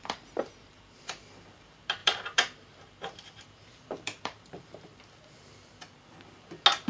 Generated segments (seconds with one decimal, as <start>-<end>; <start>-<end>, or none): 0.0-4.9